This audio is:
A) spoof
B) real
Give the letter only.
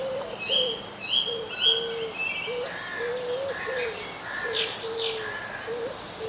B